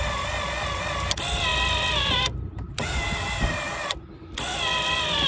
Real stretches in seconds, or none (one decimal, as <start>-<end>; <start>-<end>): 0.0-5.3